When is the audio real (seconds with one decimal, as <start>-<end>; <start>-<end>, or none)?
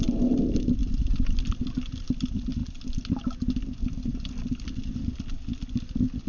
0.0-0.8; 1.6-6.3